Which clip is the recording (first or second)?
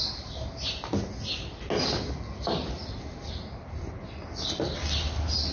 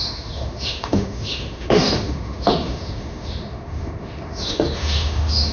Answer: first